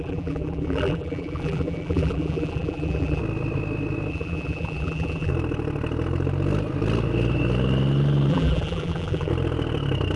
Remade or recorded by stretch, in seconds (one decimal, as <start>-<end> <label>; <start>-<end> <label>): 0.0-3.2 remade; 3.2-4.1 recorded; 4.1-5.3 remade; 5.3-8.3 recorded; 8.3-9.3 remade; 9.3-10.2 recorded